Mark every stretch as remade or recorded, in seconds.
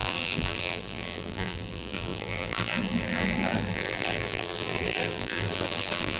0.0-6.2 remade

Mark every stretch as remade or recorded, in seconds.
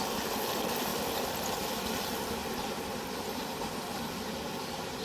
0.0-5.0 recorded